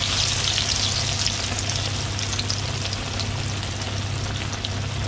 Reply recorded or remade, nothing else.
recorded